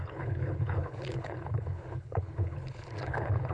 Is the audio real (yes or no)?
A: no